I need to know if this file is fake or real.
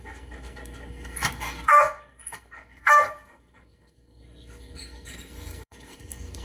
fake